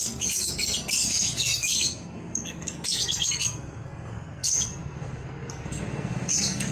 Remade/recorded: remade